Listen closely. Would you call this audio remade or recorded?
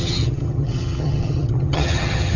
remade